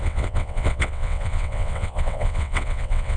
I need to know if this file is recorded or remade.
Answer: remade